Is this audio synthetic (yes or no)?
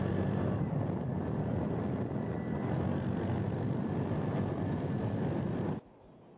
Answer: no